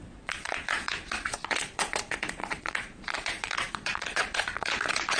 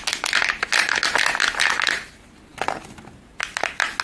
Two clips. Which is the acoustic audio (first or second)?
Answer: second